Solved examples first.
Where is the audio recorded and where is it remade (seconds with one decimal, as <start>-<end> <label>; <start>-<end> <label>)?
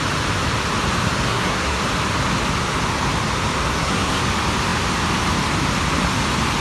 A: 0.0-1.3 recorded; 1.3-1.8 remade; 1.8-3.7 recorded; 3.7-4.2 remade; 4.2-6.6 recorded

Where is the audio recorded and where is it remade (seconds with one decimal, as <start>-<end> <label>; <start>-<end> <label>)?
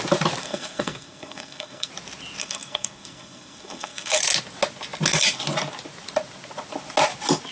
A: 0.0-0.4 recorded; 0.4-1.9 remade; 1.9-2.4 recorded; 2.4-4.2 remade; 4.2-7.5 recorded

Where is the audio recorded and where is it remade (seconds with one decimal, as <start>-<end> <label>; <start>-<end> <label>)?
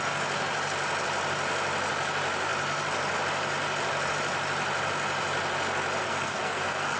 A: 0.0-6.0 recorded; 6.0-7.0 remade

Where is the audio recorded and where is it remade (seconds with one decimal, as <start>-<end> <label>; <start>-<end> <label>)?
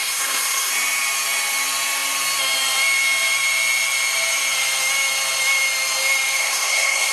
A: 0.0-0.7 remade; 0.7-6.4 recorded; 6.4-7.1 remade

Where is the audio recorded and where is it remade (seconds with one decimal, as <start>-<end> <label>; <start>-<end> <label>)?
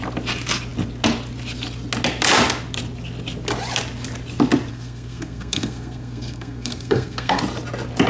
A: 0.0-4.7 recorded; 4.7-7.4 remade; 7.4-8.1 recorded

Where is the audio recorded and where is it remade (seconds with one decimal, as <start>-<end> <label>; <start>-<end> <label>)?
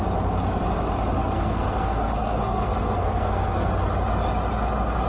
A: 0.0-1.2 recorded; 1.2-3.7 remade; 3.7-5.1 recorded